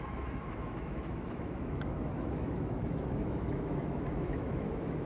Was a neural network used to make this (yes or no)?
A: yes